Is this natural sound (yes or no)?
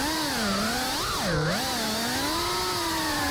yes